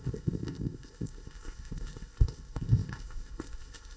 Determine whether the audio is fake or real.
fake